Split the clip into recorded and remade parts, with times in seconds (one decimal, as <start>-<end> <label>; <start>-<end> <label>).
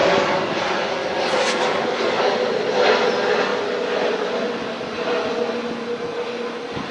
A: 0.0-0.6 remade; 0.6-1.0 recorded; 1.0-2.3 remade; 2.3-6.9 recorded